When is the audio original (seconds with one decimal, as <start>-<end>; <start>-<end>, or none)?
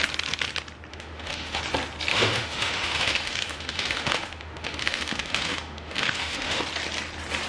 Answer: 0.0-0.9; 1.6-2.1; 6.6-7.5